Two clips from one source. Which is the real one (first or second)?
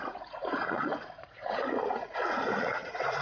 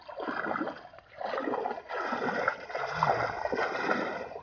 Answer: second